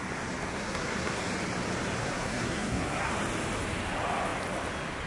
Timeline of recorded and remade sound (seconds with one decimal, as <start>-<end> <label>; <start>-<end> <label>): 0.0-0.5 recorded; 0.5-1.2 remade; 1.2-2.0 recorded; 2.0-3.1 remade; 3.1-5.1 recorded